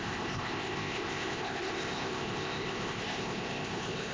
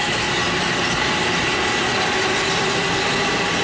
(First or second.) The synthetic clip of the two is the first